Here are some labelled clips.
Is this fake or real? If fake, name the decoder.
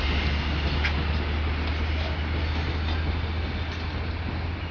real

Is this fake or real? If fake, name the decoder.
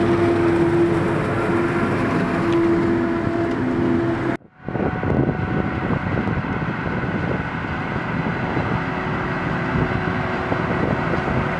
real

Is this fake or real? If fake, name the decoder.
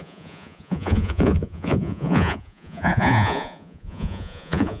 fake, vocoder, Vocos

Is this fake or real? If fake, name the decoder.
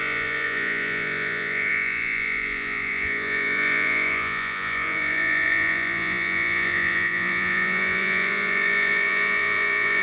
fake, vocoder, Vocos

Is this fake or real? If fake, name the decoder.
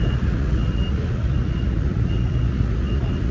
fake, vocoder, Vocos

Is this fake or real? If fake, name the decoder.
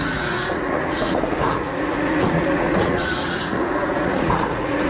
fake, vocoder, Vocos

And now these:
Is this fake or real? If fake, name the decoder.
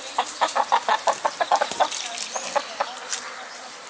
real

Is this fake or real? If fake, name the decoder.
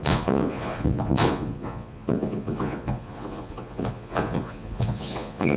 fake, vocoder, Vocos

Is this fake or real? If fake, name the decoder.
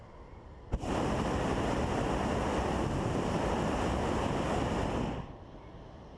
real